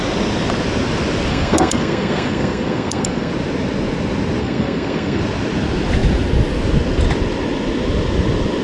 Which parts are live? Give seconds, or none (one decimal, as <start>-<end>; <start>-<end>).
0.0-1.3; 3.3-4.4; 5.2-8.6